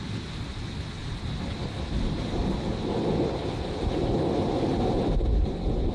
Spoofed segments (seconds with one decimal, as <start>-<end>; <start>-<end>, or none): none